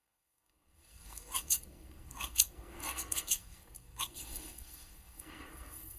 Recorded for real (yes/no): no